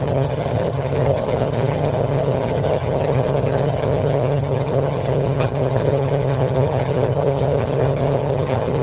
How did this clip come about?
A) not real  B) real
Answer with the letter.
A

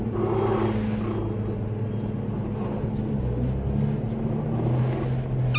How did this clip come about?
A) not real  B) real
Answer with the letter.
B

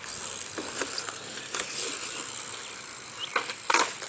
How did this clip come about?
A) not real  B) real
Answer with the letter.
B